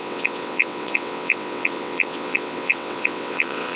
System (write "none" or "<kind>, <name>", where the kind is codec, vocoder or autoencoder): vocoder, WaveNeXt